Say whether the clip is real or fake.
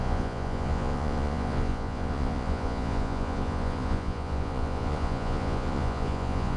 fake